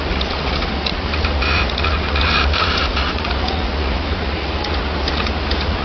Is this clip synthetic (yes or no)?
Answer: yes